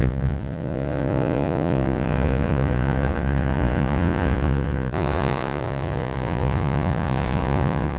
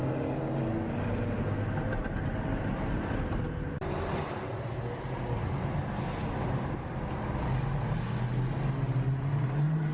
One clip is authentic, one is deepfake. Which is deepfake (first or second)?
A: first